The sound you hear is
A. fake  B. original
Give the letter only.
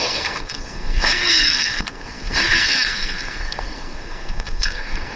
A